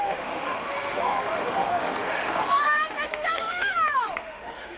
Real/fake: fake